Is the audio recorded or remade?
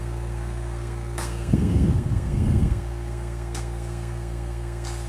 remade